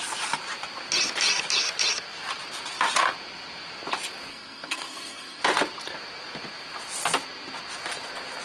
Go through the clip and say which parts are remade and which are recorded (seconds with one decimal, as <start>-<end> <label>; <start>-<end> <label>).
0.0-4.3 recorded; 4.3-5.4 remade; 5.4-8.4 recorded